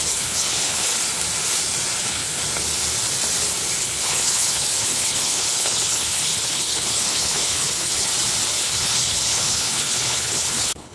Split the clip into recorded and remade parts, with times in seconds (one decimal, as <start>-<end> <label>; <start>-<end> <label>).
0.0-0.9 remade; 0.9-2.0 recorded; 2.0-2.4 remade; 2.4-3.8 recorded; 3.8-8.1 remade; 8.1-8.6 recorded; 8.6-10.9 remade